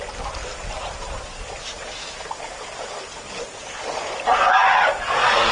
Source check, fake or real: fake